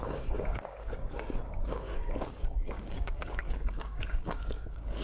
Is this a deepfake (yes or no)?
yes